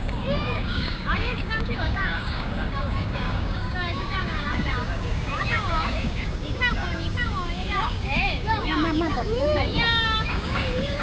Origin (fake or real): fake